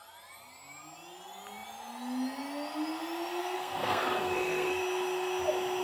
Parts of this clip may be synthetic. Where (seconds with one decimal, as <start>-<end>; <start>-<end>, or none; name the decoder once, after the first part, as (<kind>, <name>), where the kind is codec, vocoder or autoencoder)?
3.4-4.8 (codec, SNAC)